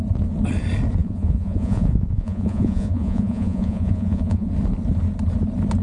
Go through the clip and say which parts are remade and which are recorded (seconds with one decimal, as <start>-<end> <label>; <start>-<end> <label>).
0.0-1.0 recorded; 1.0-4.5 remade; 4.5-5.8 recorded